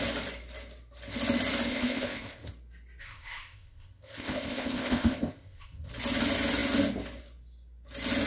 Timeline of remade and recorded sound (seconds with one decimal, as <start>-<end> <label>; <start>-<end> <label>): 0.0-1.7 recorded; 1.7-2.5 remade; 2.5-3.0 recorded; 3.0-5.9 remade; 5.9-8.3 recorded